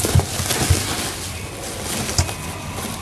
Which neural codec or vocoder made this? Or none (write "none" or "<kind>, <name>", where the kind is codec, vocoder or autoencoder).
none